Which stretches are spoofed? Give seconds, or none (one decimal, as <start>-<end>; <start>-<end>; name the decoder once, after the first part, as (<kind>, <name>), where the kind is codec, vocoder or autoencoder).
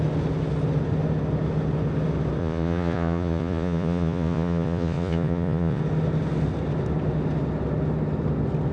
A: 2.4-5.8 (vocoder, Vocos)